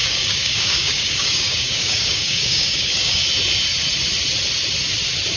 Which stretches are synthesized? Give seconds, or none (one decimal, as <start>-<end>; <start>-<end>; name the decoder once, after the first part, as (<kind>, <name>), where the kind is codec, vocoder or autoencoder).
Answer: 0.0-3.2 (codec, DAC)